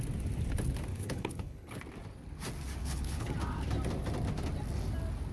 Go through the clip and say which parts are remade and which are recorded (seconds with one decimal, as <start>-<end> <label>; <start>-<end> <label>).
0.0-0.9 recorded; 0.9-1.8 remade; 1.8-2.8 recorded; 2.8-3.3 remade; 3.3-5.3 recorded